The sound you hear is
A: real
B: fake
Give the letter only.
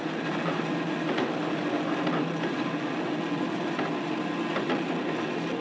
A